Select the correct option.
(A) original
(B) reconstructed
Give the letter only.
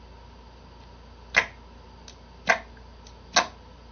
A